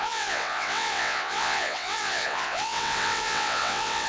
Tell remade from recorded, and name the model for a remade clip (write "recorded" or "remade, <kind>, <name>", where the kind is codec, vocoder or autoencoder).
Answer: remade, vocoder, WaveNeXt